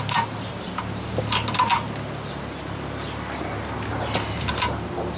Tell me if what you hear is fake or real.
real